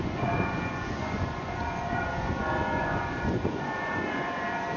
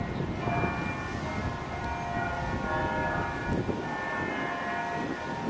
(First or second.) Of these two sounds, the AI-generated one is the first